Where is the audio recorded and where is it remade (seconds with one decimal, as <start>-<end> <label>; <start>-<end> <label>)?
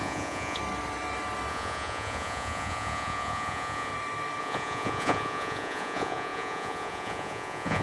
0.0-0.6 remade; 0.6-1.5 recorded; 1.5-3.9 remade; 3.9-4.4 recorded; 4.4-7.8 remade